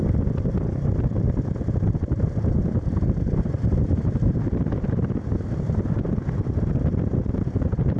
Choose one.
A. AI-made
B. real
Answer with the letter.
A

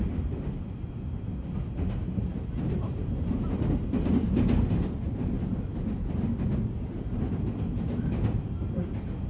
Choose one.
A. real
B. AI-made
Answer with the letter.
B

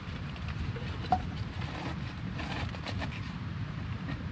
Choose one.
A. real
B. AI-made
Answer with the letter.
B